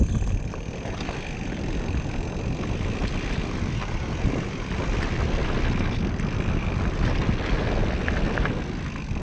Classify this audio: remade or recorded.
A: recorded